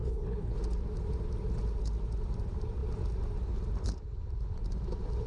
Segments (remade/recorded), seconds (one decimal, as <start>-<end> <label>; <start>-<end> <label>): 0.0-0.6 remade; 0.6-5.3 recorded